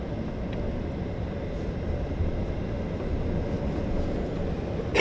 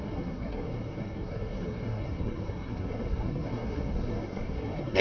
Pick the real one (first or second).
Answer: first